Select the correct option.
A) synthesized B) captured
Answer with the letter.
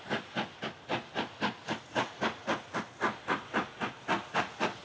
B